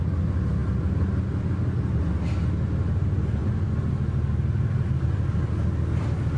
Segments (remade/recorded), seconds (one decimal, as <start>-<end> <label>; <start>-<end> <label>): 0.0-6.4 recorded